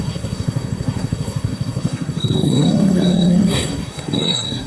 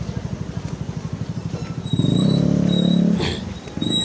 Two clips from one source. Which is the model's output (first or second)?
first